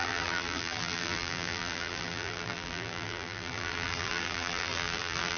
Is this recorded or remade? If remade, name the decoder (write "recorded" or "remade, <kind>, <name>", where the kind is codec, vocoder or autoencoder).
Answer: remade, vocoder, BigVGAN v2